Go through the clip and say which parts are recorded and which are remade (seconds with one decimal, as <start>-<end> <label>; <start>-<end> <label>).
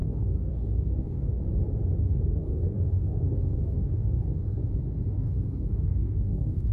0.0-1.4 remade; 1.4-2.0 recorded; 2.0-4.6 remade; 4.6-5.1 recorded; 5.1-6.7 remade